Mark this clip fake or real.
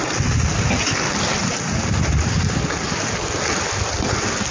real